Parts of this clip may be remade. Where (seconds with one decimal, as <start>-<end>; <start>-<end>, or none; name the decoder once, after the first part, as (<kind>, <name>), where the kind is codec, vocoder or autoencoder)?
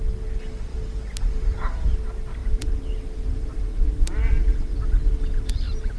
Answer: none